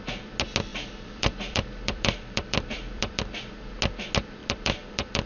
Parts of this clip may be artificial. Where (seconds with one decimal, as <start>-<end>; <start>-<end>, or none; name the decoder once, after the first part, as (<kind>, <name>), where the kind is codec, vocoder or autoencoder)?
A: 0.7-3.2 (vocoder, BigVGAN v2); 4.4-5.3